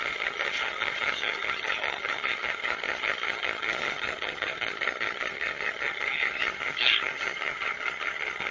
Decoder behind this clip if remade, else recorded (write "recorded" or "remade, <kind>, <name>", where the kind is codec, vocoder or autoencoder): remade, vocoder, HiFi-GAN